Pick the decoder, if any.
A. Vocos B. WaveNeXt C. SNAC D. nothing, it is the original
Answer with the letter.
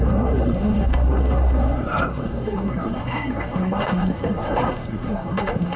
C